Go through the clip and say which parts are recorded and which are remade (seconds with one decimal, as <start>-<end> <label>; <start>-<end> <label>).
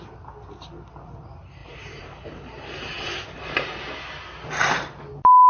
0.0-1.6 recorded; 1.6-3.9 remade; 3.9-5.5 recorded